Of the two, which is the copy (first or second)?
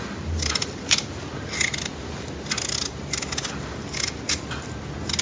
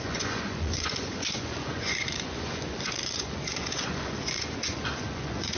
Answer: second